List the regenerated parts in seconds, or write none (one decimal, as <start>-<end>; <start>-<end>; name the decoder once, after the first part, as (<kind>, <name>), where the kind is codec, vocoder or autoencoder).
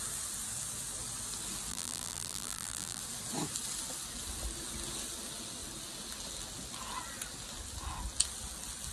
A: 1.7-3.0 (vocoder, BigVGAN v2)